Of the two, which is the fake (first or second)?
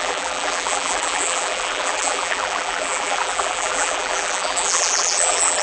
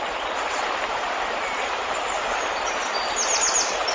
first